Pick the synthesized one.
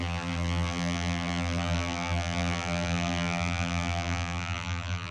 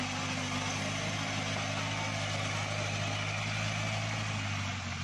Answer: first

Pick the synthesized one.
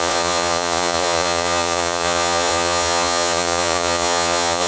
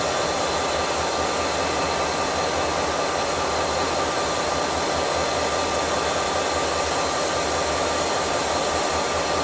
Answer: first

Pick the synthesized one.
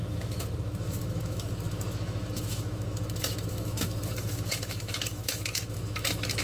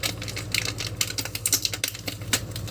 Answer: first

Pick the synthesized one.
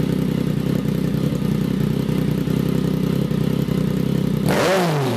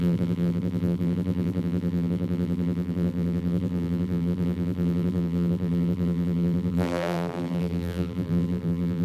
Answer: second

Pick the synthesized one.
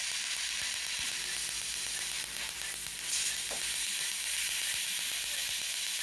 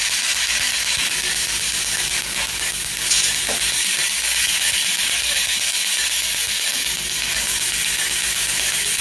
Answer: second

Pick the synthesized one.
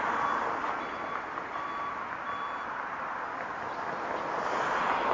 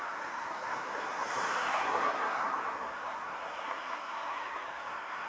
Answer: second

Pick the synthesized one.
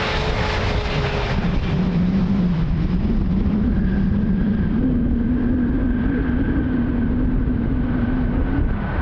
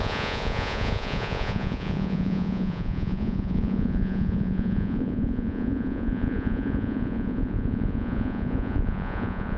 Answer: second